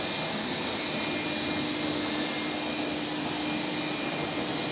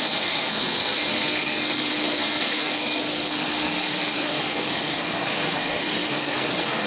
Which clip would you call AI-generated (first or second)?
second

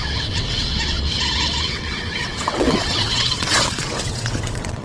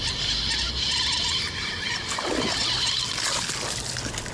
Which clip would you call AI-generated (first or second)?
first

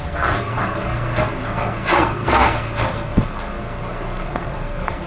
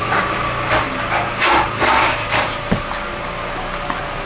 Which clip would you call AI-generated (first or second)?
first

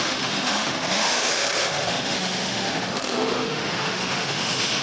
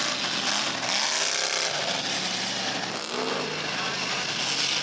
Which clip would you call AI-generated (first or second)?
first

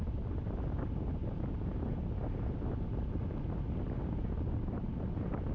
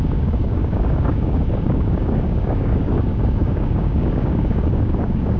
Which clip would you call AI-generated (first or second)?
second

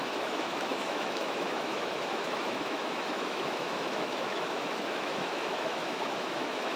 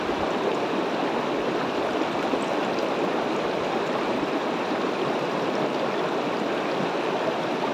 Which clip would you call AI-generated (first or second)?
first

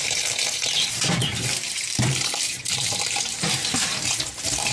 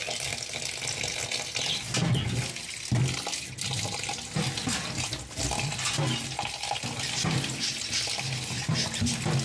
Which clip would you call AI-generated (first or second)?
first